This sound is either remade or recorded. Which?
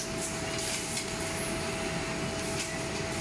recorded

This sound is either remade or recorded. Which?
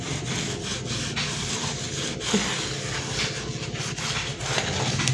recorded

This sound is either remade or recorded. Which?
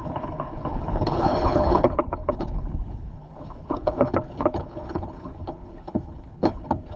remade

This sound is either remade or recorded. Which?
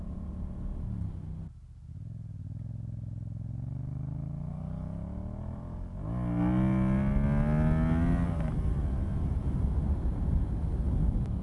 recorded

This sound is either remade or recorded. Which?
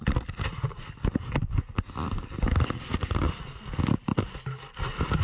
recorded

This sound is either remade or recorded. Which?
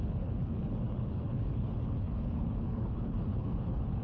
remade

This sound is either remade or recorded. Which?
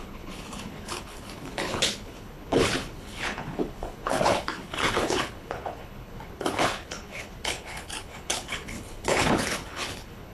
remade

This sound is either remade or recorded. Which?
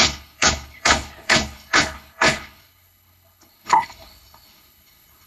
remade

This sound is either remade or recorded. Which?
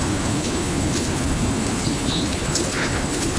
remade